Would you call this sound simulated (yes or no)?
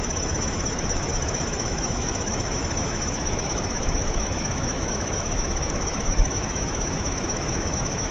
yes